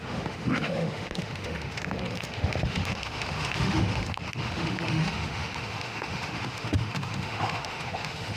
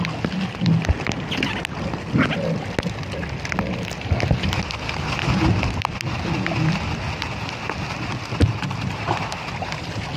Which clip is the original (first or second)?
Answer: second